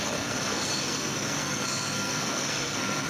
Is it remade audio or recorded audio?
remade